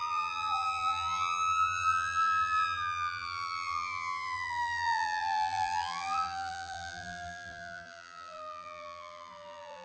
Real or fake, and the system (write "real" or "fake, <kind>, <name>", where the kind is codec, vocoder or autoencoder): fake, vocoder, BigVGAN v2